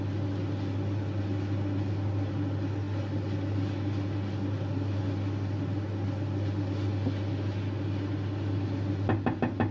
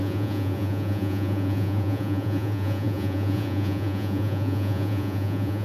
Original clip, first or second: first